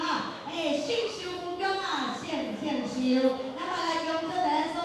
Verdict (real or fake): fake